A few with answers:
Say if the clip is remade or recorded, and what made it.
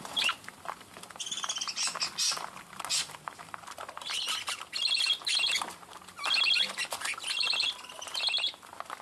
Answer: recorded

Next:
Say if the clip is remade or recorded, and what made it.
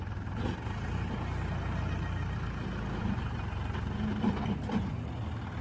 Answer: recorded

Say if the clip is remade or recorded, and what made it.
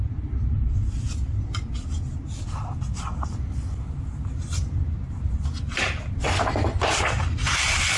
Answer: recorded